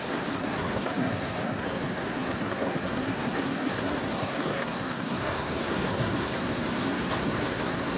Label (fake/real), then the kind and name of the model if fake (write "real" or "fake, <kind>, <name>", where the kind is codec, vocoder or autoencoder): fake, codec, SNAC